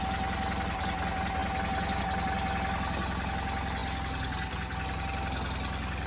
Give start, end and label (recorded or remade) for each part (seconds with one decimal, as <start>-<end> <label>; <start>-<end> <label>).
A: 0.0-6.1 recorded